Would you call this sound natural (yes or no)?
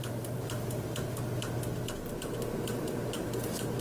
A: yes